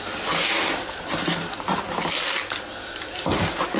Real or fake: real